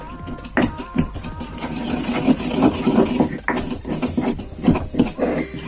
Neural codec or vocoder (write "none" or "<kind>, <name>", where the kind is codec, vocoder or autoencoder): none